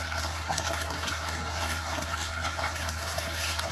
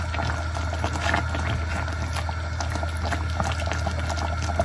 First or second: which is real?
second